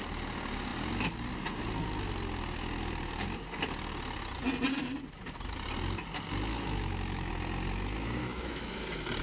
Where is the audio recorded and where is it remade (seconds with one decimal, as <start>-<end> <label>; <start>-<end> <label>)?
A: 0.0-6.5 recorded; 6.5-7.3 remade; 7.3-8.2 recorded; 8.2-8.7 remade; 8.7-9.2 recorded